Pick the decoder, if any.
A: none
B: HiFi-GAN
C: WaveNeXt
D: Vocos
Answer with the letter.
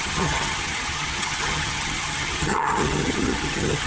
B